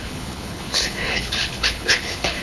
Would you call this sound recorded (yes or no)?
no